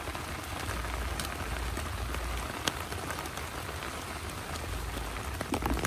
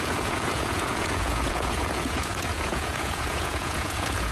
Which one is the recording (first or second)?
first